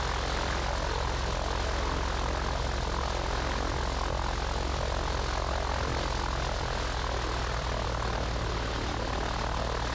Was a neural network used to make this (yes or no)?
no